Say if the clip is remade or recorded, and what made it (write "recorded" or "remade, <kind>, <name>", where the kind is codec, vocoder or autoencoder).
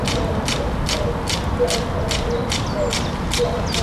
recorded